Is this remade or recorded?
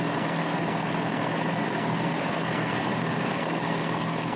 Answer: remade